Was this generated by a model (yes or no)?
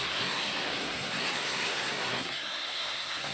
yes